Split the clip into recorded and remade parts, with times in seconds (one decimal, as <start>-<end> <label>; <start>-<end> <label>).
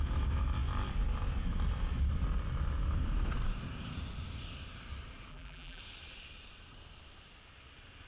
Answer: 0.0-5.3 recorded; 5.3-5.8 remade; 5.8-8.1 recorded